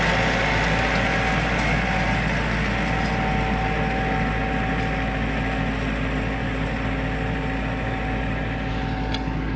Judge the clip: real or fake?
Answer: real